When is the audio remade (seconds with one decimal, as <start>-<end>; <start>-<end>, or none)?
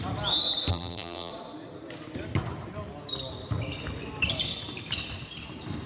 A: 0.7-1.3